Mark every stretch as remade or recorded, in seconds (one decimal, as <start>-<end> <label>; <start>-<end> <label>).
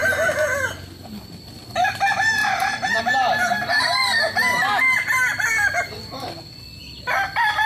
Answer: 0.0-7.7 recorded